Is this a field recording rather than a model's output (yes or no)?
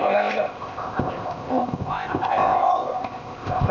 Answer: no